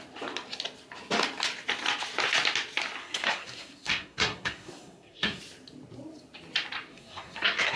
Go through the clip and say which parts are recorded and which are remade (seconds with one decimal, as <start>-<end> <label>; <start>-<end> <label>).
0.0-3.0 recorded; 3.0-5.4 remade; 5.4-6.9 recorded; 6.9-7.8 remade

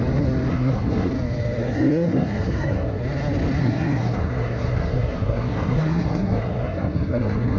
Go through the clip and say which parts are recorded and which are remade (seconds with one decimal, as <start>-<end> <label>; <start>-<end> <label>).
0.0-0.5 recorded; 0.5-1.1 remade; 1.1-1.6 recorded; 1.6-3.0 remade; 3.0-3.6 recorded; 3.6-7.6 remade

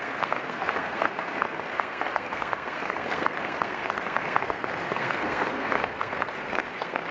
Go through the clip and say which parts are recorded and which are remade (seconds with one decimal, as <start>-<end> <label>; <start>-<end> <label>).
0.0-7.1 remade